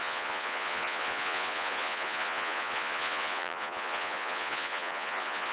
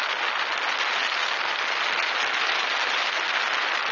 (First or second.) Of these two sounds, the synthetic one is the first